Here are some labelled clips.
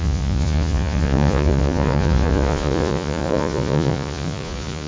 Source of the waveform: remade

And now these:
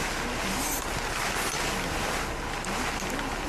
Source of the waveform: recorded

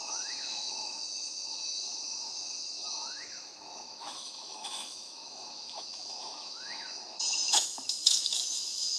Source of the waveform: remade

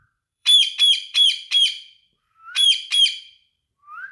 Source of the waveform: remade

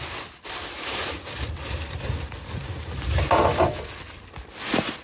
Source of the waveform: recorded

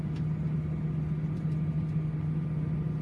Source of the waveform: recorded